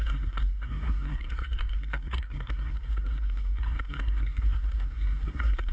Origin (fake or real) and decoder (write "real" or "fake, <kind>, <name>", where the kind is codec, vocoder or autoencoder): fake, codec, SNAC